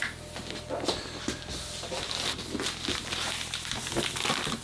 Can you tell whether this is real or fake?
real